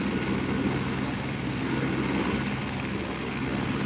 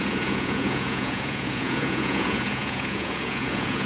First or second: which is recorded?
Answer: first